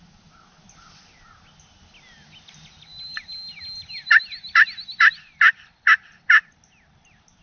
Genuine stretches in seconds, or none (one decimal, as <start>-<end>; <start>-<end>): 0.0-7.4